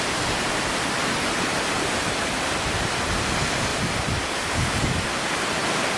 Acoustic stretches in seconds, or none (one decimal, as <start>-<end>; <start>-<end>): 0.0-3.7; 4.7-6.0